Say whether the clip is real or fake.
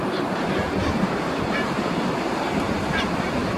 fake